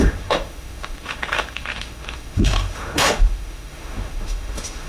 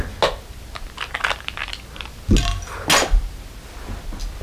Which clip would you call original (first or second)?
second